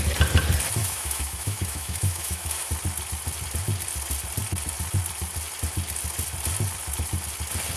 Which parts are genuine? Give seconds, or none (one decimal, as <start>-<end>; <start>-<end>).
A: 0.0-0.8; 2.7-7.8